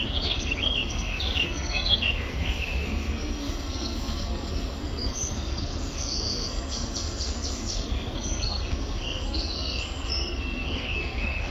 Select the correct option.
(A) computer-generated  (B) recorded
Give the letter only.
A